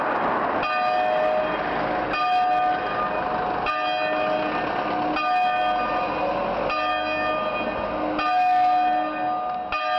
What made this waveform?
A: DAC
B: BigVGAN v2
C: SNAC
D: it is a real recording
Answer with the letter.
D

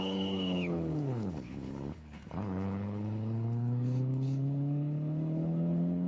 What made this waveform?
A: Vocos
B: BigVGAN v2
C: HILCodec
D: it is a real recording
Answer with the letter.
C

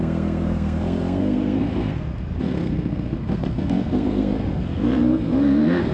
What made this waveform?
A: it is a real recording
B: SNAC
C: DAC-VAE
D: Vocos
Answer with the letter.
B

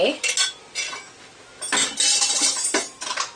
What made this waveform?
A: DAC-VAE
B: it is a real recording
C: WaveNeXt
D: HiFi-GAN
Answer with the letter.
B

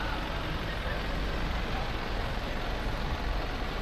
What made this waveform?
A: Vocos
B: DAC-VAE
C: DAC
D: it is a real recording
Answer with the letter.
D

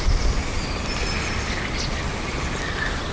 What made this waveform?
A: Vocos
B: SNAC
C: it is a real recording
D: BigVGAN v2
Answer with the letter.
C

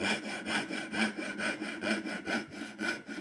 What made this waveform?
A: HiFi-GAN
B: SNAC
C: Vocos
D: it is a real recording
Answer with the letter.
C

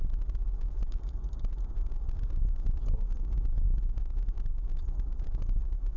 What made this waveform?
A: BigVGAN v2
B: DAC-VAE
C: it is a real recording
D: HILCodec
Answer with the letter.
C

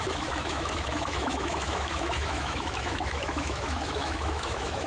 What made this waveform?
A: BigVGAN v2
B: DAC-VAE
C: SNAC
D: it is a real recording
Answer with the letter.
B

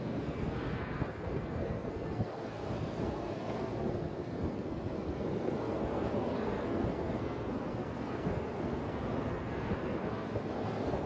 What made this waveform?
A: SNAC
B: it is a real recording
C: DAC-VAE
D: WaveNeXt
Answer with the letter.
A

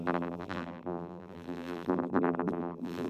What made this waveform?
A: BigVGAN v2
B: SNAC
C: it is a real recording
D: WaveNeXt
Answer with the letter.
A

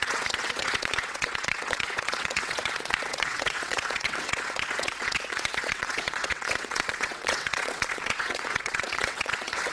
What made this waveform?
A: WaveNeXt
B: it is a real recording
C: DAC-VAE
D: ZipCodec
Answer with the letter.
A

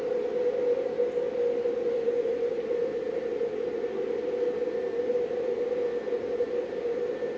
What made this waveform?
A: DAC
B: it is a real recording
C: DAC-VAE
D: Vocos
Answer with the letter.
B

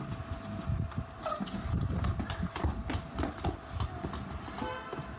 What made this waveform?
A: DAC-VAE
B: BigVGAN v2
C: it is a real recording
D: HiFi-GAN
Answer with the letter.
C